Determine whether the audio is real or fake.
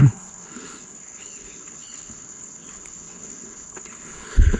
fake